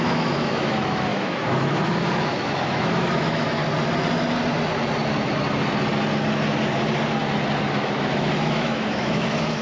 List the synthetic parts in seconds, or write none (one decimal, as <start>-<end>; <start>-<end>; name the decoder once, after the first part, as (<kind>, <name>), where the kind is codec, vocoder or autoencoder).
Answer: 0.0-3.6 (autoencoder, DAC-VAE); 7.7-9.6